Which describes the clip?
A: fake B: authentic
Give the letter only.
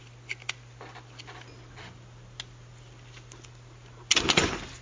B